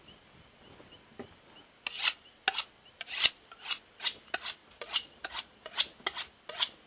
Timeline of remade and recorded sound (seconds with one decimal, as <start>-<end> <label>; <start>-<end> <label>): 0.0-4.6 recorded; 4.6-5.7 remade; 5.7-6.9 recorded